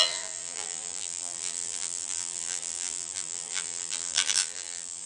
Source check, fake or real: fake